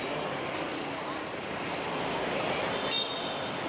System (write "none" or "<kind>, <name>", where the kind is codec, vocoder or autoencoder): none